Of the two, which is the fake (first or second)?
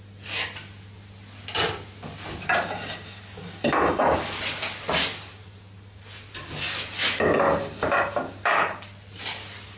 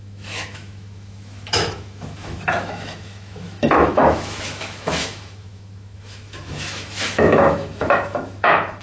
second